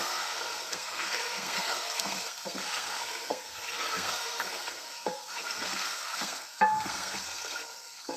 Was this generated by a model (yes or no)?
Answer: yes